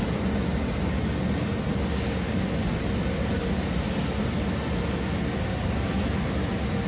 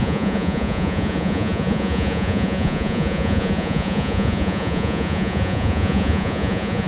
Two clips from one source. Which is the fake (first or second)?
second